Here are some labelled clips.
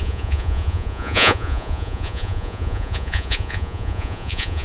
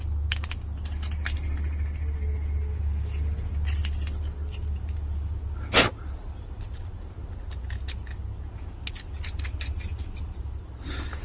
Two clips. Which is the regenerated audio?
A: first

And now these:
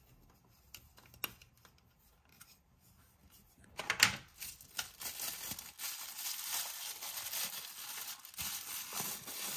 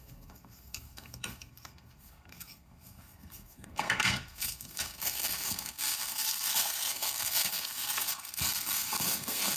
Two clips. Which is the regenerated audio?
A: second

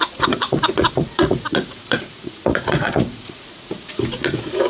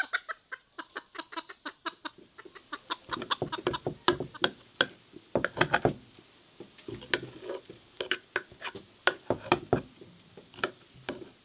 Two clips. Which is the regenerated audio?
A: first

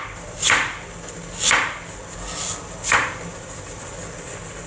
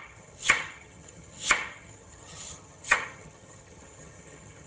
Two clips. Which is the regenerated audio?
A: second